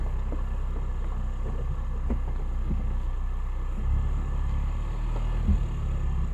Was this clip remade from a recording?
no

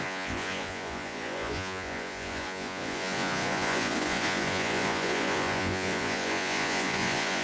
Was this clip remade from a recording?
yes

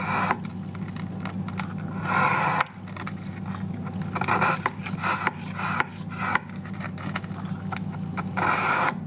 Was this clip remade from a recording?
no